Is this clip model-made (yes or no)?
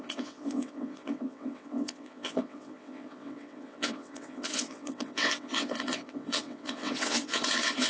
yes